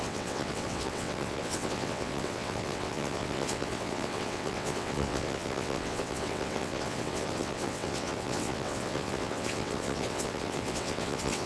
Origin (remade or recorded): remade